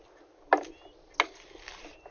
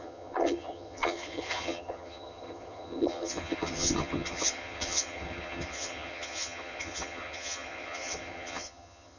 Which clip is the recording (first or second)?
first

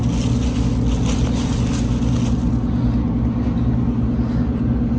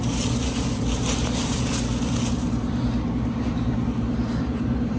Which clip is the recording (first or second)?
first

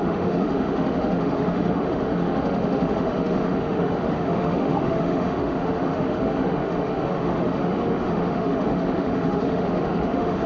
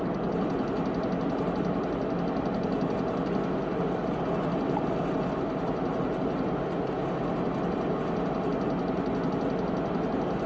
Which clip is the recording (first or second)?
second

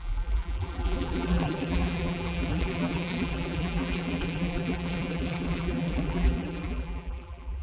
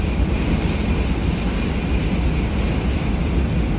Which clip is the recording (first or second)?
second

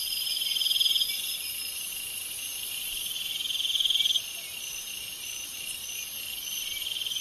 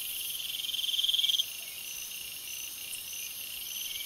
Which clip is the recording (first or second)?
second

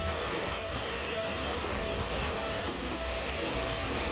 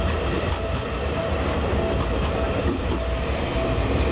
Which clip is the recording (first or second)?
second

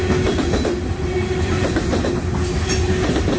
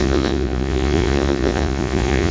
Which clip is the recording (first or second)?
first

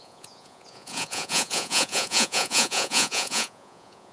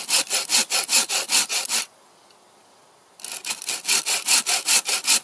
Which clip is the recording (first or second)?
second